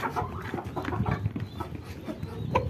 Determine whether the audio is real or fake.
real